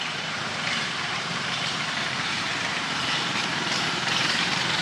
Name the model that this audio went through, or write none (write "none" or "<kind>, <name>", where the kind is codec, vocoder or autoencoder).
vocoder, BigVGAN v2